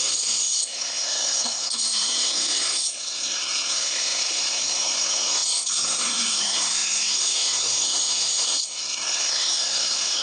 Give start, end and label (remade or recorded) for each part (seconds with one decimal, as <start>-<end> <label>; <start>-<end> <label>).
0.0-10.2 remade